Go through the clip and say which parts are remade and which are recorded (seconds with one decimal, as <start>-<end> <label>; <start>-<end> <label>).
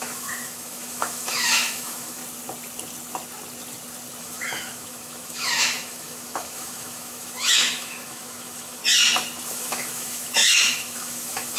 0.0-2.2 remade; 2.2-4.2 recorded; 4.2-8.8 remade; 8.8-9.5 recorded; 9.5-11.6 remade